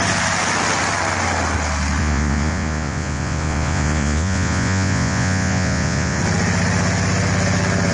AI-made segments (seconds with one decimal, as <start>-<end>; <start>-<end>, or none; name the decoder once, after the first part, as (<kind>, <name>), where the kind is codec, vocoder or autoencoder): 2.0-6.2 (vocoder, Vocos)